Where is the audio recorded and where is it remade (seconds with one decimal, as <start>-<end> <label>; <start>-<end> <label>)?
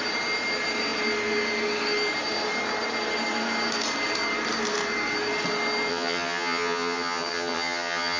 0.0-5.9 recorded; 5.9-8.2 remade